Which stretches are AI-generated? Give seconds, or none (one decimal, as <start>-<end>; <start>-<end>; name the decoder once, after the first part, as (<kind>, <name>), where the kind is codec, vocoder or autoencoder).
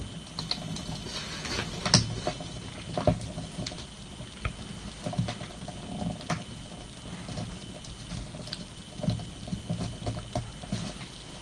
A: none